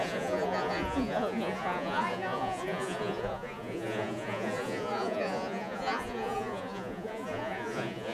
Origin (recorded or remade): remade